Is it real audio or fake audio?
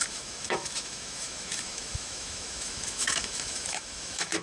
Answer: fake